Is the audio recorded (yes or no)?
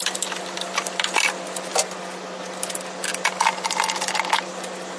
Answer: yes